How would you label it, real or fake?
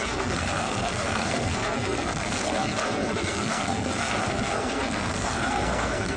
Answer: fake